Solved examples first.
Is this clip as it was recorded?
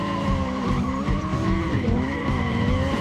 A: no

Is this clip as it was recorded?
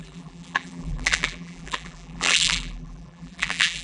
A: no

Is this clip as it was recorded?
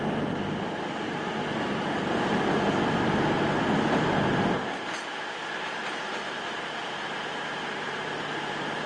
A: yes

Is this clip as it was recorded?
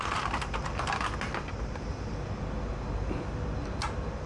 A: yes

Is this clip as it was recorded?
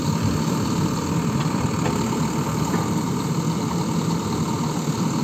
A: no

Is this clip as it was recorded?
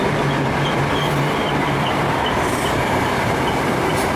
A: no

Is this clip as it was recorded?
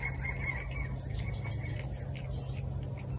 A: yes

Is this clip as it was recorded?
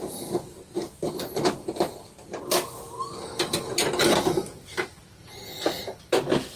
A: yes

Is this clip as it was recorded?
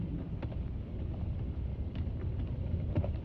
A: no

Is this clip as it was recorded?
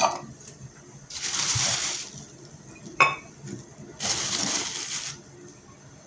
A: no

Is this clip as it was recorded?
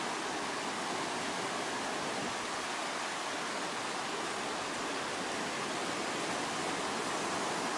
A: yes